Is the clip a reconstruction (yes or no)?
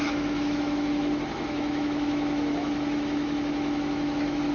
yes